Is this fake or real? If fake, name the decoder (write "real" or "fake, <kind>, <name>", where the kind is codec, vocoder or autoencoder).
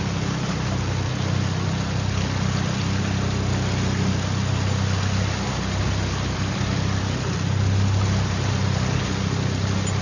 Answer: real